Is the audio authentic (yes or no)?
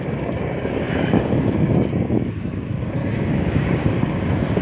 no